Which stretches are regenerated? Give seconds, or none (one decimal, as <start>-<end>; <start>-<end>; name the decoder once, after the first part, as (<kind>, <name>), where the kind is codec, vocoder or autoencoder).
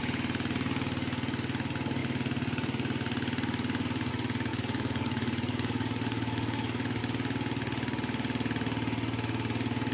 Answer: 4.5-7.0 (codec, DAC)